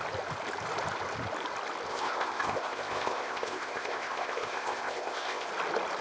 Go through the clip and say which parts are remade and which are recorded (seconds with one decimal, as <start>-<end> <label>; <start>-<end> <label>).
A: 0.0-1.9 recorded; 1.9-5.5 remade; 5.5-6.0 recorded